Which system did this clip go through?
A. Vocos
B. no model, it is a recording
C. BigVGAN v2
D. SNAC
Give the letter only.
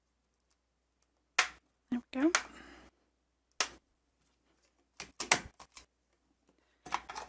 B